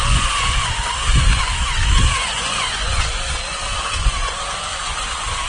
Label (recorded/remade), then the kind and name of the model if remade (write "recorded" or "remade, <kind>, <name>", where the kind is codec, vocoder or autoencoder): remade, vocoder, Vocos